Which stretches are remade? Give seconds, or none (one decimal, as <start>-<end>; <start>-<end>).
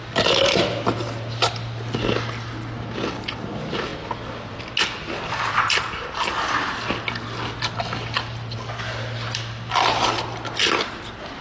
none